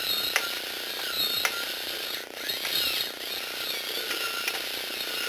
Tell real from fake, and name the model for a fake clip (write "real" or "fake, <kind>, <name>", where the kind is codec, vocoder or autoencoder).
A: real